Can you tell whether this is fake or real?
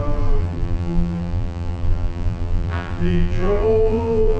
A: fake